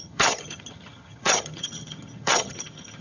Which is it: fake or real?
fake